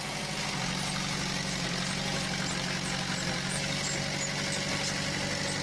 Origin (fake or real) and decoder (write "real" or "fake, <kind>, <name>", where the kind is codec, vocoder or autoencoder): real